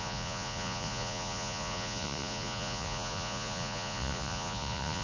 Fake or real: fake